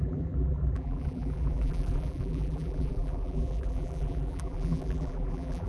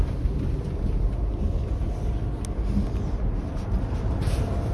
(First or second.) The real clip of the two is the second